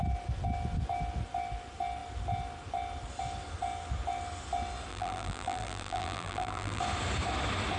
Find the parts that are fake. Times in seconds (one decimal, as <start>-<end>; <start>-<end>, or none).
4.9-6.8